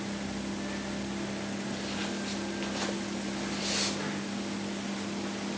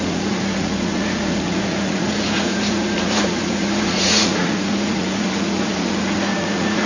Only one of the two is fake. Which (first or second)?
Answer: second